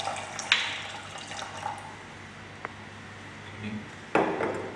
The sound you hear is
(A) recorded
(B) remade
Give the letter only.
A